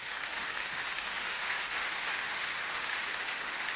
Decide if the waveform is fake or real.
fake